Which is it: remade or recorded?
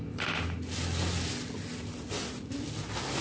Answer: recorded